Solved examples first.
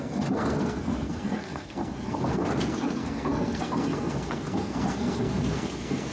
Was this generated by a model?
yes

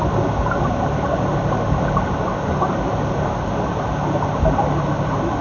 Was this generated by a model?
no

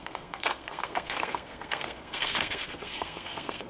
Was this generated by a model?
yes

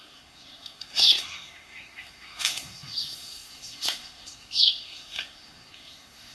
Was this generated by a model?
yes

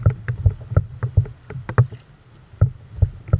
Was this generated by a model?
no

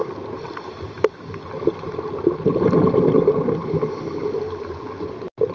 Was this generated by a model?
no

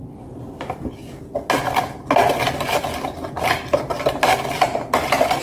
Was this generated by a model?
no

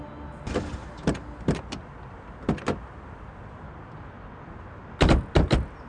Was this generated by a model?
no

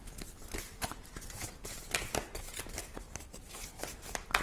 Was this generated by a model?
no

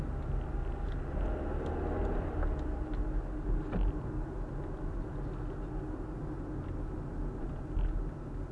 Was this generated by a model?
no